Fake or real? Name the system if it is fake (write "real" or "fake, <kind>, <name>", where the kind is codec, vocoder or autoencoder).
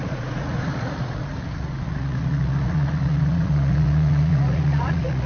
fake, vocoder, Vocos